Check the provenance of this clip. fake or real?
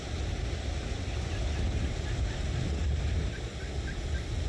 fake